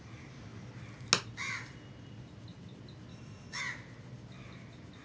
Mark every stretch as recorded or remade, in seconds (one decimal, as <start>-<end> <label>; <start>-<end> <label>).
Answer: 0.0-3.1 recorded; 3.1-3.6 remade; 3.6-5.0 recorded

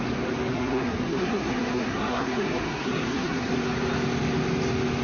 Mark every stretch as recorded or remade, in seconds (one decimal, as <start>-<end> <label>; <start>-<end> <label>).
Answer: 0.0-0.5 recorded; 0.5-3.5 remade; 3.5-5.0 recorded

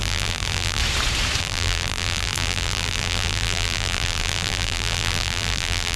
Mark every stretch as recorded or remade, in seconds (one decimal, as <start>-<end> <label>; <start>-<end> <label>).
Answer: 0.0-0.8 remade; 0.8-1.4 recorded; 1.4-6.0 remade

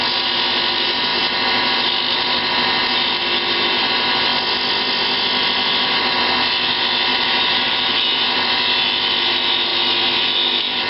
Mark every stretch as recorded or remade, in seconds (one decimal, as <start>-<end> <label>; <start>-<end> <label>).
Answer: 0.0-7.1 recorded; 7.1-7.7 remade; 7.7-10.9 recorded

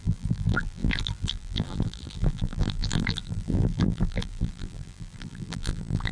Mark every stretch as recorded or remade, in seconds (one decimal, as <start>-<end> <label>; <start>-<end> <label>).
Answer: 0.0-6.1 remade

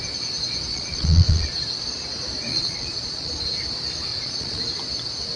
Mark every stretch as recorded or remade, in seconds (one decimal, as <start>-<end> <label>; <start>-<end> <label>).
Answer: 0.0-0.7 recorded; 0.7-1.5 remade; 1.5-2.5 recorded; 2.5-3.3 remade; 3.3-4.1 recorded; 4.1-4.6 remade; 4.6-5.4 recorded

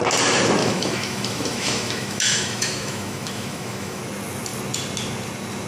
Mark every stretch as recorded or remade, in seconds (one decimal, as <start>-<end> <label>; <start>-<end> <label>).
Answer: 0.0-0.6 recorded; 0.6-4.0 remade; 4.0-5.7 recorded